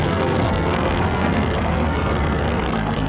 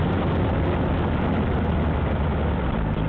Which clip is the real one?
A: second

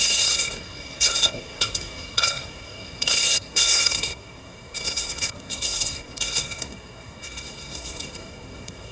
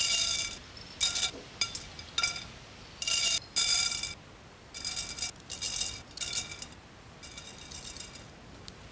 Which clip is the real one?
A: second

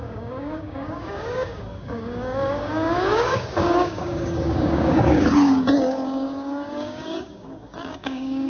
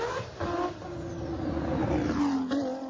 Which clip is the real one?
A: second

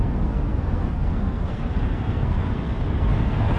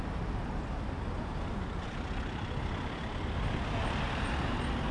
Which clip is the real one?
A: second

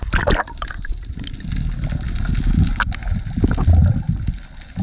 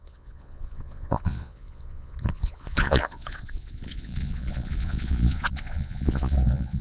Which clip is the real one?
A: first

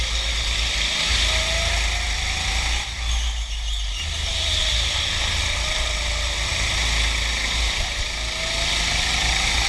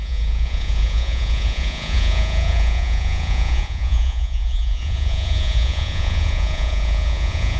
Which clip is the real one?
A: first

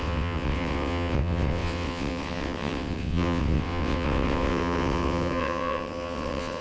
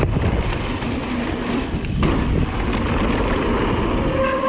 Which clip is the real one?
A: second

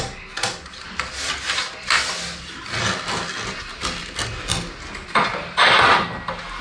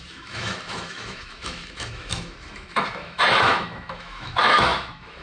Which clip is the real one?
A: first